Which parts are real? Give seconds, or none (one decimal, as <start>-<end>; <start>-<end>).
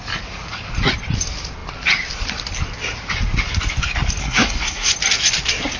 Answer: 0.0-4.2; 4.9-5.8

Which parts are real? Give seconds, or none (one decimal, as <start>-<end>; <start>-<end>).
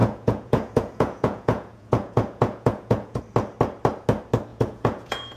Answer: 3.2-4.5